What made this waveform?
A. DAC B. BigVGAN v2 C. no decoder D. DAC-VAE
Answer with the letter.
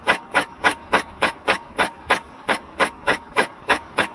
A